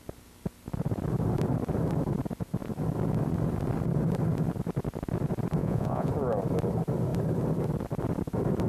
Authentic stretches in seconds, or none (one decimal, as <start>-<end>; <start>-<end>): 0.0-5.6; 6.1-8.7